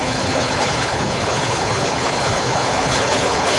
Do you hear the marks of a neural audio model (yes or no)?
yes